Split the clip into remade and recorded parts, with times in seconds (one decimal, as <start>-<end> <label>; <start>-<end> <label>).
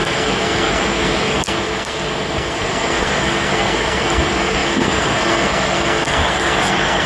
0.0-7.1 remade